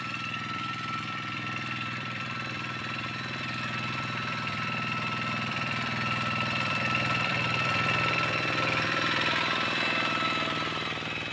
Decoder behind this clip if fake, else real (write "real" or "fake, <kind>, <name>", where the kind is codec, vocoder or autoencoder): fake, vocoder, BigVGAN v2